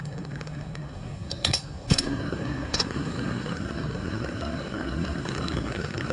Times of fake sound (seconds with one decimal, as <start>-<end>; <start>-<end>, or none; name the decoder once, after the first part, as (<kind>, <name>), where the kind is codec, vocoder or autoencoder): 0.0-6.1 (codec, SNAC)